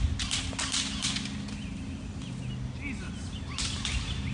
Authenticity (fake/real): real